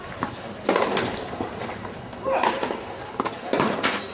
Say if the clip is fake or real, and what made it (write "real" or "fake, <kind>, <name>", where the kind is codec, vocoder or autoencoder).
real